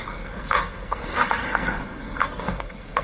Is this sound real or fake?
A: fake